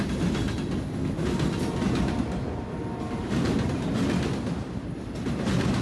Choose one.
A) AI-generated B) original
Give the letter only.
B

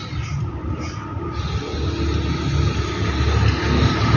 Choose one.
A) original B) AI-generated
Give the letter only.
A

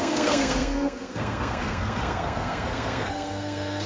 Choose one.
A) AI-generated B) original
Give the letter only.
A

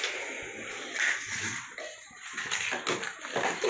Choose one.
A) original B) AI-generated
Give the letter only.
A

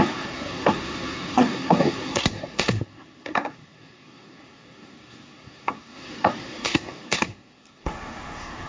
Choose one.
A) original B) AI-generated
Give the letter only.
B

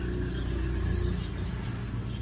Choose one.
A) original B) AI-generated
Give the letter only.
A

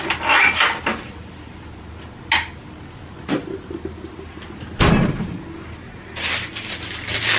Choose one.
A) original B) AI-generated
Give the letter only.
A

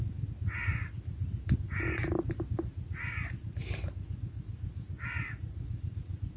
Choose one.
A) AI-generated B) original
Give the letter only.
B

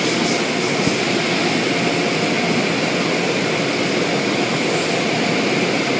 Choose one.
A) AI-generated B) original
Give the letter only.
B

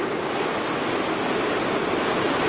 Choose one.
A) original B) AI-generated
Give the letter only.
A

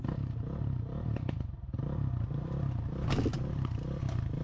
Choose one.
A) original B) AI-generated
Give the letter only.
B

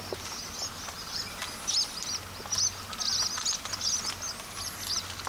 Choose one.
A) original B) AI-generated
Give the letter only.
A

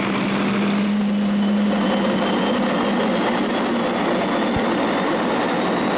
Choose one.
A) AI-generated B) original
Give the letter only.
B